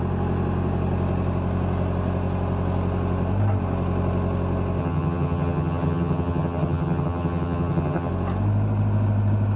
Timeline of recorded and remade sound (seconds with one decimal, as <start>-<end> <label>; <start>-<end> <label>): 0.0-4.8 recorded; 4.8-8.1 remade; 8.1-9.6 recorded